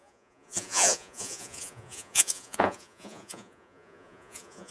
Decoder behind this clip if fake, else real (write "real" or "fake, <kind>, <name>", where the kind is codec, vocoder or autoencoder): fake, vocoder, Vocos